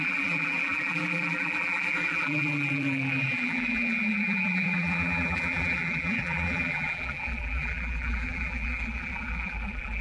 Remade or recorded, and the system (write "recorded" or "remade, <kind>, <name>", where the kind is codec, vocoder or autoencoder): remade, vocoder, BigVGAN v2